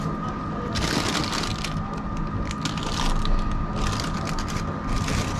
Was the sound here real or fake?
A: real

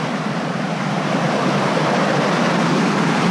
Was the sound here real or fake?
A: fake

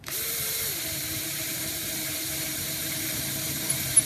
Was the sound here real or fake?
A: fake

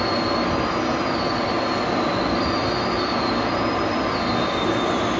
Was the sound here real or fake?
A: real